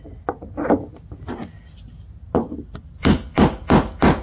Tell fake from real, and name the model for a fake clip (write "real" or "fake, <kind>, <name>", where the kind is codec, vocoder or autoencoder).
real